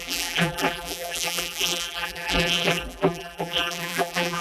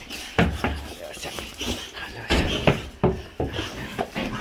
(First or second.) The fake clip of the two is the first